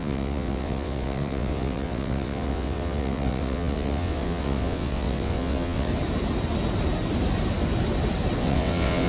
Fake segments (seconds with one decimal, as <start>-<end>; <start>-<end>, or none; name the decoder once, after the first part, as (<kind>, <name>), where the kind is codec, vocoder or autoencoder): 0.0-5.9 (vocoder, WaveNeXt); 8.4-9.1